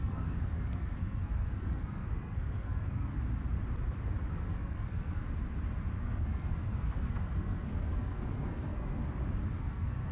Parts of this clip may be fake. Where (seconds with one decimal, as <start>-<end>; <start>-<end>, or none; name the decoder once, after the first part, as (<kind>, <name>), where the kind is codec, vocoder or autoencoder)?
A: 0.0-3.1 (codec, SNAC); 4.3-5.2; 6.0-9.0; 9.6-10.1